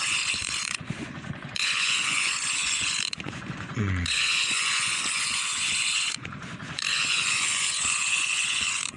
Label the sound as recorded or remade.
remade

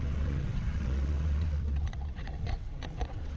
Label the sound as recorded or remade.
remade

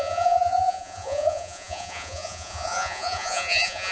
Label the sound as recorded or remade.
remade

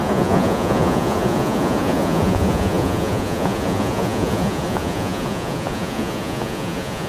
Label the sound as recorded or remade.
remade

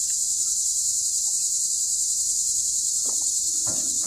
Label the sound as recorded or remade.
remade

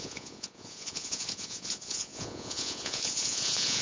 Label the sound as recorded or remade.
remade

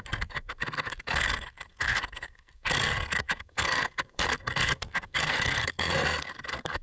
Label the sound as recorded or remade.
remade